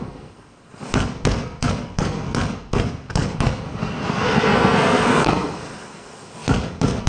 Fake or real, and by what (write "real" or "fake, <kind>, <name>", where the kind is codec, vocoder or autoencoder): fake, codec, SNAC